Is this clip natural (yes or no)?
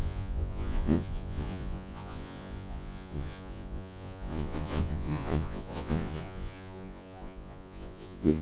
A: no